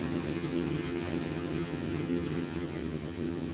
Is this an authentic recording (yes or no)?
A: no